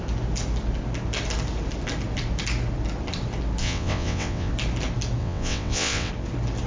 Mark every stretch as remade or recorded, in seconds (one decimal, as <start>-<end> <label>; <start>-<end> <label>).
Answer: 0.0-3.6 recorded; 3.6-4.5 remade; 4.5-5.2 recorded; 5.2-6.1 remade; 6.1-6.7 recorded